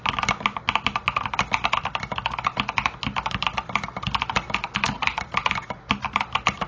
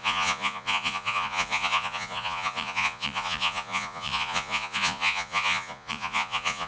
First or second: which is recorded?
first